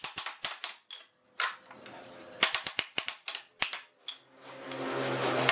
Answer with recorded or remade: recorded